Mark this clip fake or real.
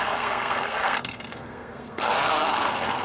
fake